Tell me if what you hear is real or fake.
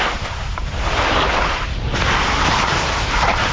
real